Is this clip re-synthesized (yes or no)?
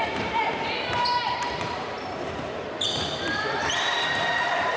yes